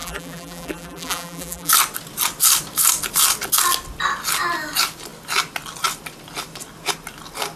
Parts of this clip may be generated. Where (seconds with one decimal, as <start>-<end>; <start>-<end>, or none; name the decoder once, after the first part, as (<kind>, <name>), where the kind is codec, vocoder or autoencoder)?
0.0-1.7 (vocoder, BigVGAN v2)